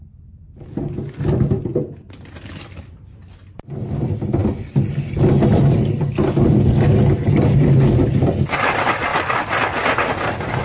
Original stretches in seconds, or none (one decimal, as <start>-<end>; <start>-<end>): 0.0-10.6